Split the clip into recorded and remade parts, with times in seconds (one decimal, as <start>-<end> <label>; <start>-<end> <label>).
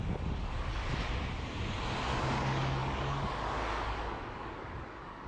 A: 0.0-0.8 remade; 0.8-2.0 recorded; 2.0-5.3 remade